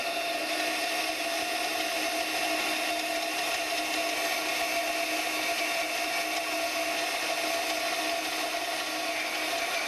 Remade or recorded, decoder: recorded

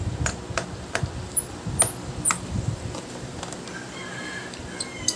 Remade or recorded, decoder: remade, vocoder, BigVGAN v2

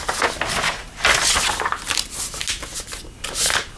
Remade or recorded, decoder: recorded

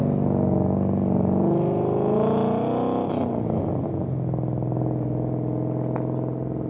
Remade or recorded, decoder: recorded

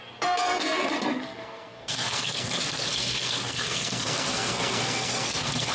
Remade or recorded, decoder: remade, codec, SNAC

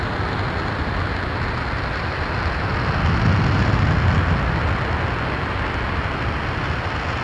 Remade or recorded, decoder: recorded